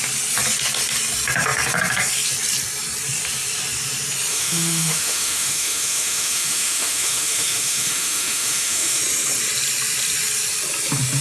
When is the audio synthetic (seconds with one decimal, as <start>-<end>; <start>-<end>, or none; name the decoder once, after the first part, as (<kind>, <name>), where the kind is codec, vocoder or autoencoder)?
4.3-9.0 (autoencoder, DAC-VAE)